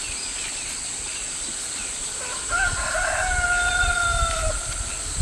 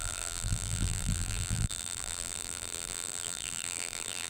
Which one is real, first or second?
first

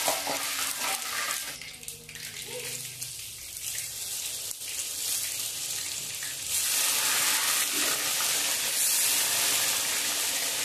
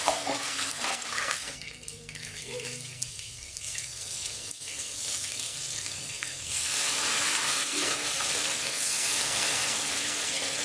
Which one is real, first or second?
first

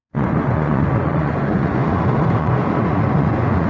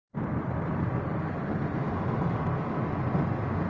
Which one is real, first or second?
second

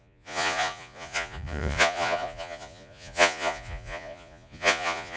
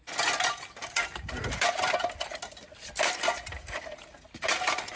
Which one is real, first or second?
second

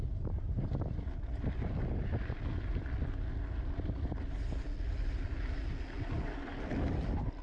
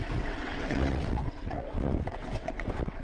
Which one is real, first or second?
first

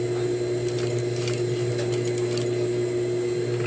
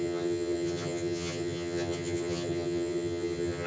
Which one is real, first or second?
first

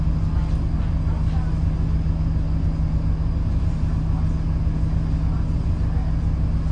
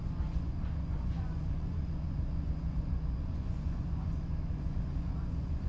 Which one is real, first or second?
first